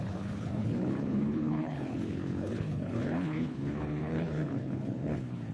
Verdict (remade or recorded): remade